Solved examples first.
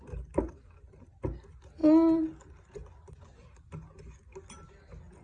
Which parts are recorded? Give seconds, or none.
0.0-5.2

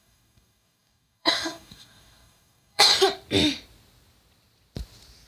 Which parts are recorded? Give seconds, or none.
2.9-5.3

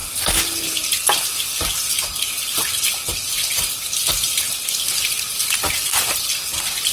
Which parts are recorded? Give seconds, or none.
0.0-6.9

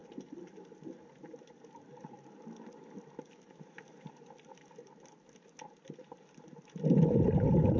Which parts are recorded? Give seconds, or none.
0.0-7.8

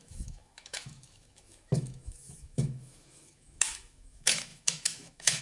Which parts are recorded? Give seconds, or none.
none